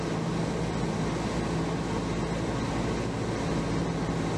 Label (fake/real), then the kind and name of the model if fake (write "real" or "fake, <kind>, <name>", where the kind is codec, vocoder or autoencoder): real